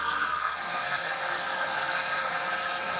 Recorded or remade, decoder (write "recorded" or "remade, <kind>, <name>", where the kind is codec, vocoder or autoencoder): remade, codec, SNAC